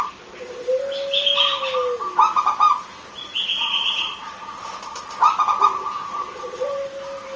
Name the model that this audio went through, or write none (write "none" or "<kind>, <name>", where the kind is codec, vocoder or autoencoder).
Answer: none